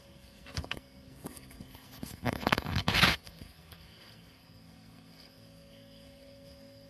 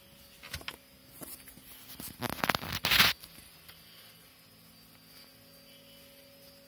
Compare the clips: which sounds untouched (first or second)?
second